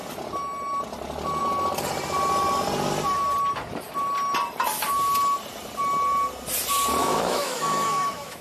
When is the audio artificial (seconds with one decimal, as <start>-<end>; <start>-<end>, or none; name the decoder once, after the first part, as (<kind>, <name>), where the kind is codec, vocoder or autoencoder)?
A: 7.0-8.4 (autoencoder, DAC-VAE)

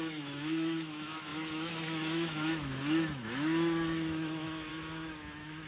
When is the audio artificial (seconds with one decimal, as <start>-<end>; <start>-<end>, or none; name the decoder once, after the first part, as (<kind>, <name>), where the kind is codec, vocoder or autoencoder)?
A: 0.0-5.7 (autoencoder, DAC-VAE)

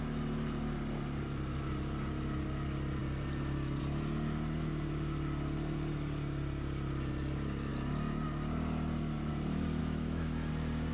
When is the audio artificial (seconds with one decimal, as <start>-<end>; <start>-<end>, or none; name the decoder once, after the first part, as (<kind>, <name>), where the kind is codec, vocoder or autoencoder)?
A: 9.8-10.5 (autoencoder, DAC-VAE)

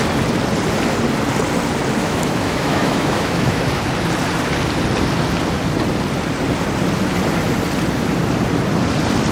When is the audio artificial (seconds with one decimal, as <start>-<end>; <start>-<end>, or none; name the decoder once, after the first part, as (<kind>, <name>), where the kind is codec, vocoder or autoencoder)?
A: 2.0-3.6 (autoencoder, DAC-VAE)